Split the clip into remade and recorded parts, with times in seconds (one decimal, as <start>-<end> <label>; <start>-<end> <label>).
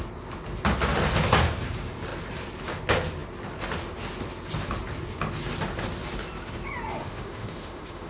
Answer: 0.0-7.0 recorded; 7.0-8.1 remade